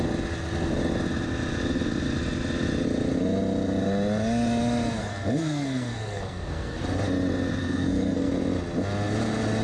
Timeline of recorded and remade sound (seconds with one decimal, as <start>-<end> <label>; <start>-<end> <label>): 0.0-5.0 recorded; 5.0-6.8 remade; 6.8-7.6 recorded; 7.6-8.3 remade; 8.3-9.6 recorded